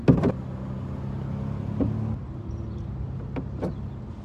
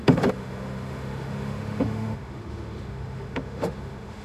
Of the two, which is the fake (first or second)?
second